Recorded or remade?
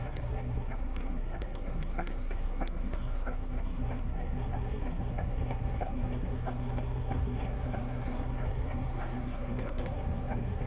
remade